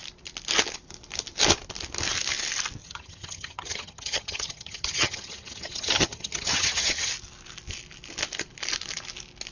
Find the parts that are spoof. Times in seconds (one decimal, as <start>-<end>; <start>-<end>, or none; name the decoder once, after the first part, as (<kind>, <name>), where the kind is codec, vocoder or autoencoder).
2.8-7.1 (vocoder, HiFi-GAN)